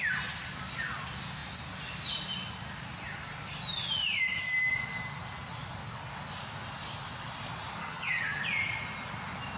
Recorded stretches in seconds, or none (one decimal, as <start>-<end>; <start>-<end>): 0.0-7.8; 8.4-9.6

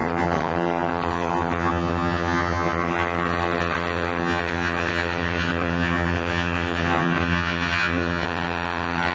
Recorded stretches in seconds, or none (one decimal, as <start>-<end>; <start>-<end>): none

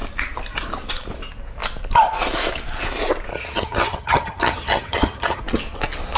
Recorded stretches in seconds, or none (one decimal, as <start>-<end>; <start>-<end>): 0.0-3.3; 5.4-6.2

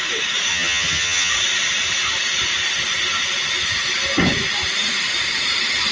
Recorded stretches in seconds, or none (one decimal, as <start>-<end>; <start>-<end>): 0.0-0.5; 1.3-5.9

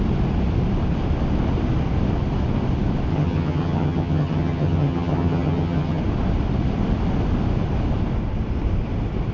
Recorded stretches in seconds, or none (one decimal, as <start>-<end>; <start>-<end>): 0.0-3.1; 6.0-9.3

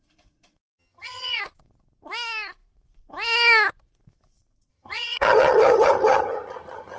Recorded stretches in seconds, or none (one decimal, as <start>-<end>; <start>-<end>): 0.0-0.8; 1.4-4.7

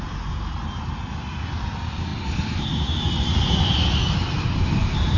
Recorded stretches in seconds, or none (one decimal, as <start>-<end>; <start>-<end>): 0.0-5.2